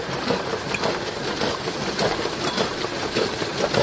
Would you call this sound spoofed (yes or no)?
no